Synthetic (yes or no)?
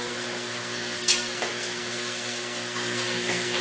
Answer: yes